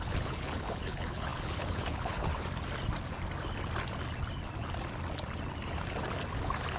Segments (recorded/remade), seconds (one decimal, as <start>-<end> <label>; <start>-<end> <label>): 0.0-2.3 remade; 2.3-6.8 recorded